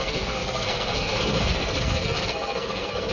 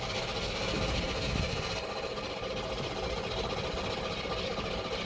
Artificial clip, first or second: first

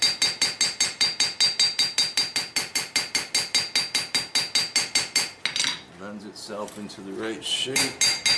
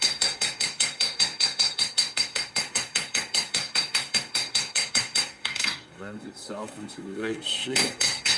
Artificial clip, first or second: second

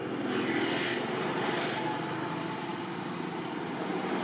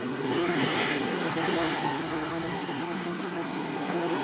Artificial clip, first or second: second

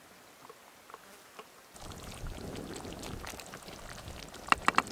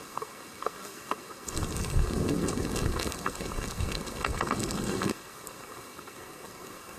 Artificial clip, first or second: second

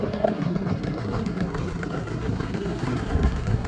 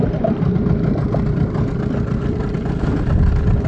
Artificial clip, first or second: first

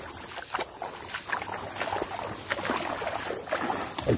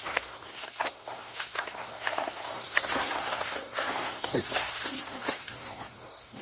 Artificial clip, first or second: second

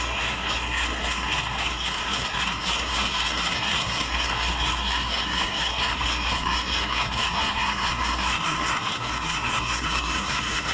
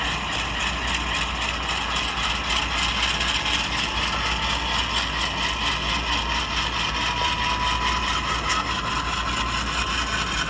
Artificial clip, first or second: first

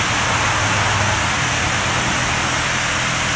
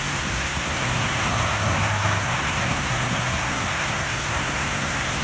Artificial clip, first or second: second